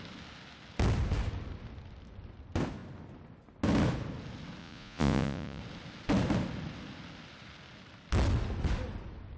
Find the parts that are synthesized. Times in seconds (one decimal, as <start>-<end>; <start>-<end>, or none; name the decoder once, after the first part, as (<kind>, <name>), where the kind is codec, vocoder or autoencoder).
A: 4.6-5.6 (vocoder, Vocos)